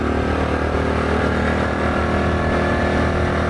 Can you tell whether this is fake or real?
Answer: real